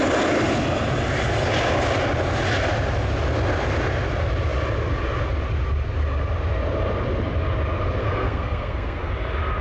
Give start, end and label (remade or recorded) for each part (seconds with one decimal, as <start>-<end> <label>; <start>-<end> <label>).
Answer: 0.0-8.0 recorded; 8.0-9.1 remade; 9.1-9.6 recorded